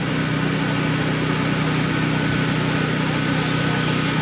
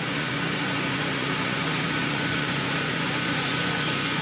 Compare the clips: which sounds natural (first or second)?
first